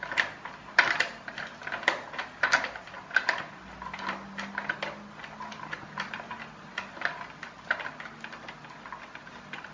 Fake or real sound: real